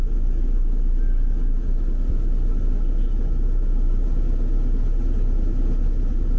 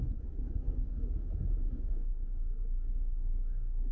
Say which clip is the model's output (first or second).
second